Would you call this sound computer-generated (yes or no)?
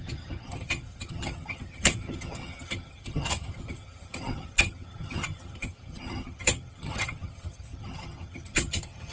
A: yes